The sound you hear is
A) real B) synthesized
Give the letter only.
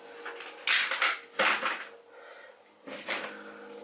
A